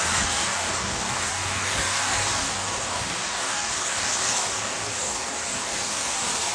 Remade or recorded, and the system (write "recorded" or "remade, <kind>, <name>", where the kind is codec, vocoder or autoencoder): remade, codec, DAC